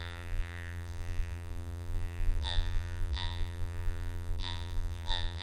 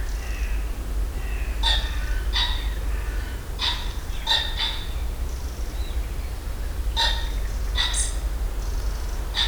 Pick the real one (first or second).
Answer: second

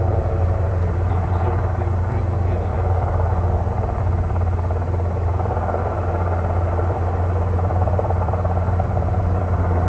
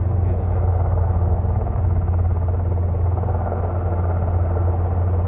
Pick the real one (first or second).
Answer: second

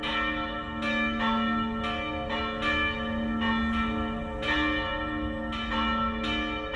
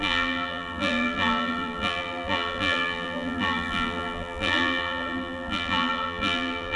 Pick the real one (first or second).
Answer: first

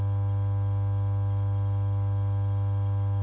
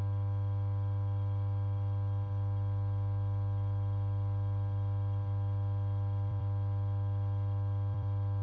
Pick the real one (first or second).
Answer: first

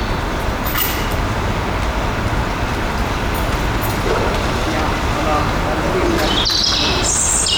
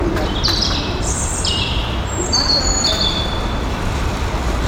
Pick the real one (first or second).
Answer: first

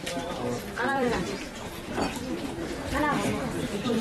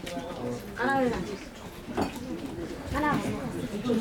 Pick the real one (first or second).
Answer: second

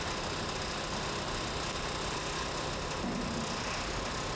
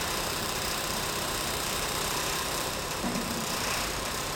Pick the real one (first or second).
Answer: first